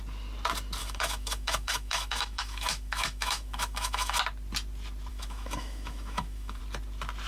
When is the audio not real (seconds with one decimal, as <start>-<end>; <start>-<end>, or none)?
0.8-4.2; 5.1-6.6